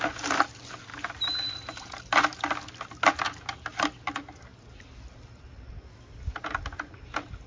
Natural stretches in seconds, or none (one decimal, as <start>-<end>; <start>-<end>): 0.0-7.5